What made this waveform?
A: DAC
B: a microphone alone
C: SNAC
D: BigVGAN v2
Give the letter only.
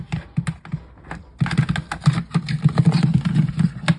B